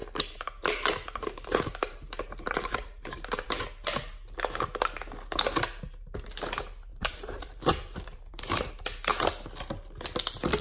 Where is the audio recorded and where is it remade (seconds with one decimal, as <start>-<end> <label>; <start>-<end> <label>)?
0.0-3.5 remade; 3.5-6.9 recorded; 6.9-8.7 remade; 8.7-10.6 recorded

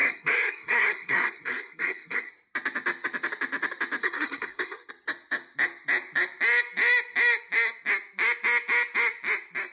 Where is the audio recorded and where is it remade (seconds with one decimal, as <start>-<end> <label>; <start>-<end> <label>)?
0.0-2.3 remade; 2.3-4.0 recorded; 4.0-4.9 remade; 4.9-9.7 recorded

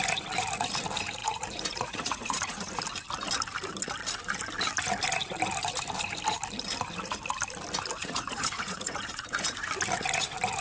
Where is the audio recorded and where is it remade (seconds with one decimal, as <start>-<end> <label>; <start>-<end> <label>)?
0.0-1.2 recorded; 1.2-2.8 remade; 2.8-8.0 recorded; 8.0-9.7 remade; 9.7-10.6 recorded

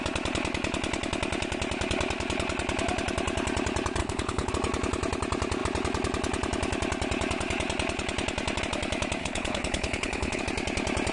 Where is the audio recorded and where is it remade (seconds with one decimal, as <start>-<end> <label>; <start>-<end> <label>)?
0.0-4.0 recorded; 4.0-4.5 remade; 4.5-9.2 recorded; 9.2-10.4 remade; 10.4-11.1 recorded

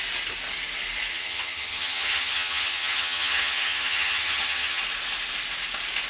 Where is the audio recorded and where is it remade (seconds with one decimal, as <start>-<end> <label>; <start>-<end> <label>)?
0.0-1.1 recorded; 1.1-4.8 remade; 4.8-6.1 recorded

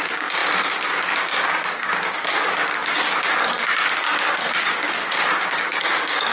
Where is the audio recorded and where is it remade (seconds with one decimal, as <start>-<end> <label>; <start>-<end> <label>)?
0.0-6.3 remade